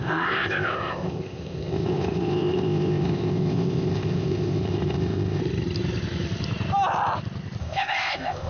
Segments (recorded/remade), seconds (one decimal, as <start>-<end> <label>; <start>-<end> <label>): 0.0-5.4 remade; 5.4-7.6 recorded; 7.6-8.5 remade

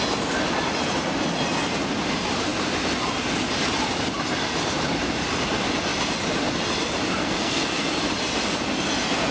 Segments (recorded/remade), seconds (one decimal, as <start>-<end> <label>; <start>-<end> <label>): 0.0-7.2 recorded; 7.2-7.8 remade; 7.8-9.3 recorded

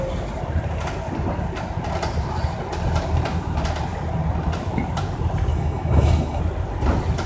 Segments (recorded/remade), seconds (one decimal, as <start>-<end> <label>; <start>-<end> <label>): 0.0-5.5 recorded; 5.5-6.4 remade; 6.4-7.3 recorded

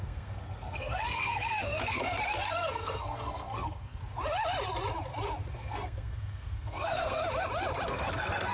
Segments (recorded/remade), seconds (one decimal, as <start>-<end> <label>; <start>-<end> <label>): 0.0-4.0 remade; 4.0-5.5 recorded; 5.5-7.2 remade; 7.2-7.9 recorded; 7.9-8.5 remade

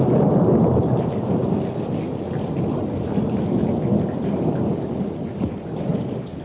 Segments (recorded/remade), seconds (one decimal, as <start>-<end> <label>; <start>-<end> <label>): 0.0-6.4 recorded

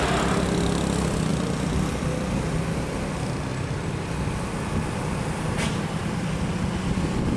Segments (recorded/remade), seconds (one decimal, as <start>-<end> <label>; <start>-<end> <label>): 0.0-7.4 recorded

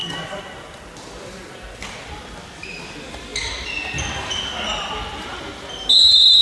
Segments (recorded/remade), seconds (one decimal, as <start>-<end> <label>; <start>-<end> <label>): 0.0-6.4 recorded

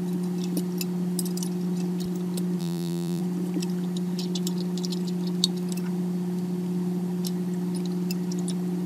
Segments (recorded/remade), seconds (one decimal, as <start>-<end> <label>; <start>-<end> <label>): 0.0-2.6 recorded; 2.6-3.2 remade; 3.2-8.9 recorded